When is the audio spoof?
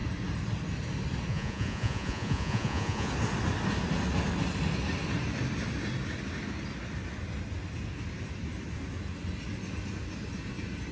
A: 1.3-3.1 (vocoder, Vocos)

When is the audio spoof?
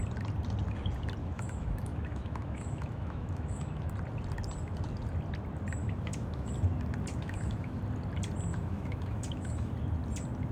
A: 1.2-3.9 (autoencoder, DAC-VAE); 5.8-6.5; 7.1-7.8; 8.5-9.7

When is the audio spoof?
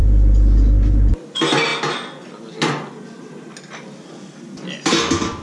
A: none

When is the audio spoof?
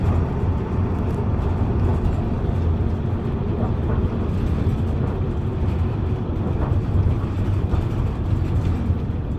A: none